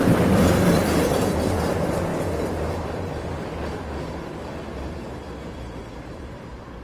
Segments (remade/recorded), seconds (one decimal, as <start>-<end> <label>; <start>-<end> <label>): 0.0-2.1 remade; 2.1-6.2 recorded; 6.2-6.8 remade